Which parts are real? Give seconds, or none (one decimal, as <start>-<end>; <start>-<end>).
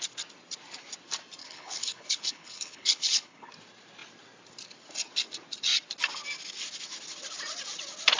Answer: 0.0-1.4; 3.5-8.2